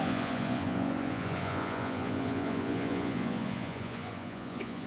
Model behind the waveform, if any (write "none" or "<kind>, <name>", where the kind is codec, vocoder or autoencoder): vocoder, Vocos